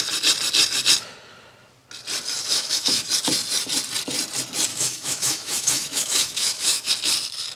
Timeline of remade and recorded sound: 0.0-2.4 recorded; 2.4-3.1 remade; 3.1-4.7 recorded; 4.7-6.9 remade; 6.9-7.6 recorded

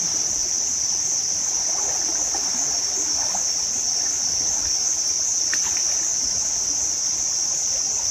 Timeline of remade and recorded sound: 0.0-8.1 recorded

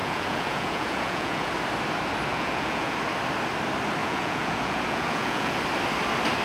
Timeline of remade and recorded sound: 0.0-1.5 remade; 1.5-2.3 recorded; 2.3-3.0 remade; 3.0-4.0 recorded; 4.0-5.6 remade; 5.6-6.4 recorded

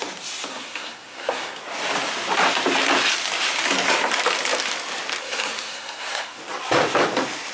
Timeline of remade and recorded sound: 0.0-0.5 recorded; 0.5-1.6 remade; 1.6-5.2 recorded; 5.2-6.4 remade; 6.4-7.5 recorded

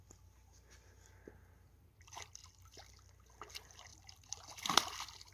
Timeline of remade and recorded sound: 0.0-5.3 recorded

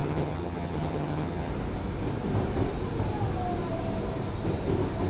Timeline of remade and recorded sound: 0.0-1.5 remade; 1.5-5.1 recorded

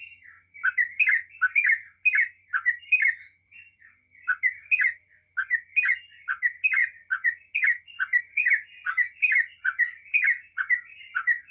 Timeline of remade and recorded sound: 0.0-11.5 recorded